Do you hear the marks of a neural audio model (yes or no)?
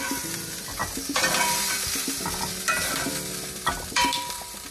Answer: yes